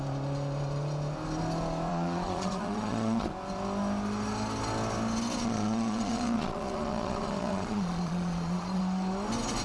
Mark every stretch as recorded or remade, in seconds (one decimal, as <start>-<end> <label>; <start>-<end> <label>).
0.0-1.9 recorded; 1.9-3.3 remade; 3.3-5.4 recorded; 5.4-8.8 remade; 8.8-9.6 recorded